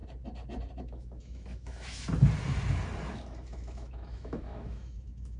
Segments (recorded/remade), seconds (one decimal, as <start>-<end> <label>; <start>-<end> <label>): 0.0-0.8 recorded; 0.8-2.1 remade; 2.1-3.1 recorded; 3.1-5.4 remade